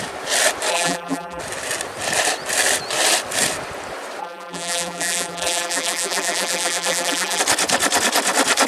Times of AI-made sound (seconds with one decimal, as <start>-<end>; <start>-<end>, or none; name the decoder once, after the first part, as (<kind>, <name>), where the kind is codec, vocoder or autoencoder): 0.7-1.4 (vocoder, BigVGAN v2); 4.2-7.4